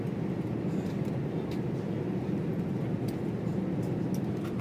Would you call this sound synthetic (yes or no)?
no